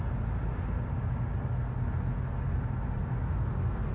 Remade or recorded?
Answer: recorded